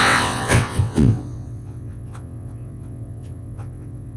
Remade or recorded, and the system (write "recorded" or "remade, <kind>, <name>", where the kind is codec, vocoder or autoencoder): remade, vocoder, WaveNeXt